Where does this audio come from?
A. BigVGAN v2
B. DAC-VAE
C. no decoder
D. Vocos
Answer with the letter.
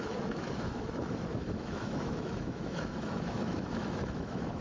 B